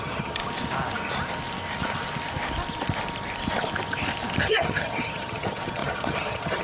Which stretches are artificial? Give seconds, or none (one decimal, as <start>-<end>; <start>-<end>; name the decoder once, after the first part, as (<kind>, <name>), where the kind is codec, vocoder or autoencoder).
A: 0.0-0.4 (vocoder, HiFi-GAN); 4.4-6.6